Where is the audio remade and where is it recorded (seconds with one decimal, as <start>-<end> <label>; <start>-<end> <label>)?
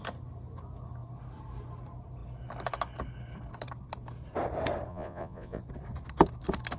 0.0-4.9 recorded; 4.9-5.6 remade; 5.6-6.8 recorded